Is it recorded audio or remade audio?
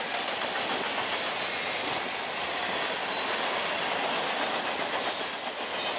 recorded